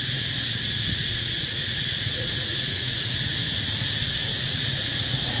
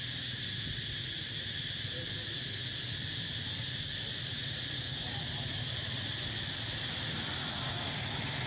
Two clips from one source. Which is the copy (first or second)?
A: first